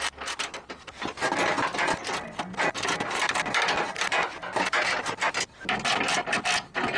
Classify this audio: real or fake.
real